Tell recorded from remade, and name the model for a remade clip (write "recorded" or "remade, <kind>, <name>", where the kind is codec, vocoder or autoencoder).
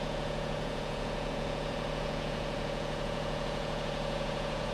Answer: remade, vocoder, Vocos